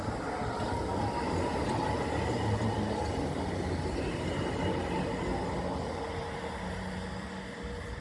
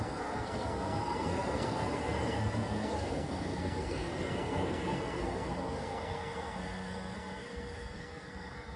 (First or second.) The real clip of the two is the first